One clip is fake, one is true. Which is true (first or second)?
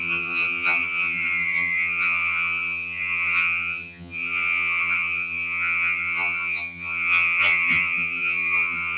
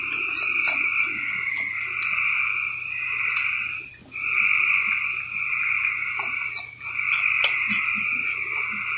second